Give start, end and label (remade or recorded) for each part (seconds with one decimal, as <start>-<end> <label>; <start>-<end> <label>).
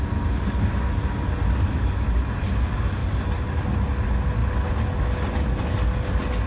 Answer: 0.0-6.5 recorded